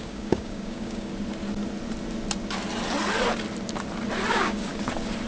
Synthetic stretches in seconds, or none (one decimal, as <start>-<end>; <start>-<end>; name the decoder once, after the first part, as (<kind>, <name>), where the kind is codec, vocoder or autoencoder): 0.0-1.1 (codec, DAC); 4.3-4.7